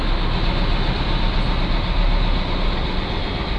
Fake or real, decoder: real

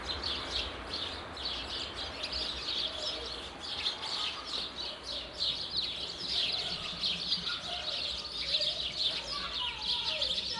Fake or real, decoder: real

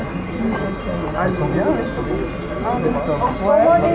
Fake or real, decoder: real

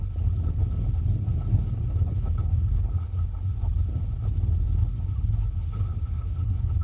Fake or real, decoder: fake, codec, HILCodec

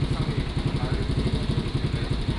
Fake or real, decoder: real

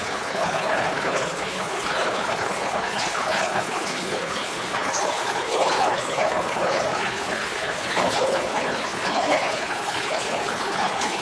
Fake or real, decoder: fake, codec, HILCodec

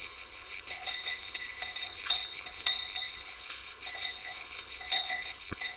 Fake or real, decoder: fake, codec, HILCodec